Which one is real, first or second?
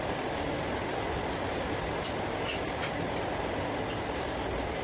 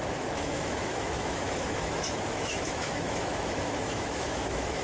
first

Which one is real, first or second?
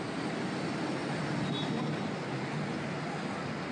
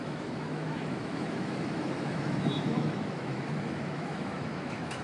first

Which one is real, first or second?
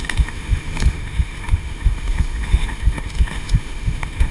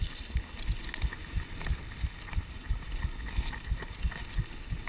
second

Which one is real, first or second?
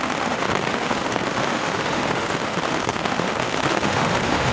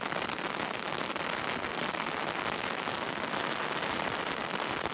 second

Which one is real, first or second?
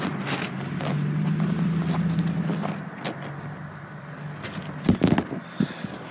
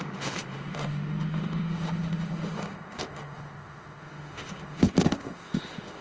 first